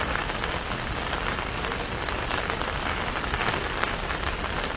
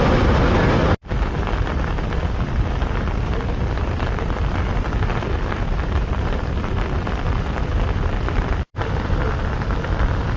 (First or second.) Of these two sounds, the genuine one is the first